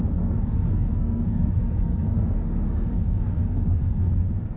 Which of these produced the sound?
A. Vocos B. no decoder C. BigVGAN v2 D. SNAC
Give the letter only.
D